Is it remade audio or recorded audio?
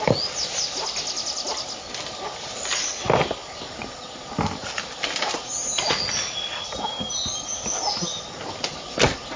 recorded